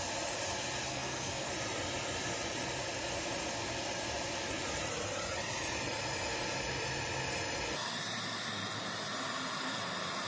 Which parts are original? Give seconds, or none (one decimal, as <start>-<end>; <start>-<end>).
0.0-0.9; 1.5-10.3